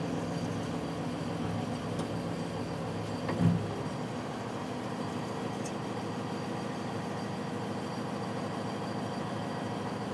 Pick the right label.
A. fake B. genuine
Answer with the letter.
B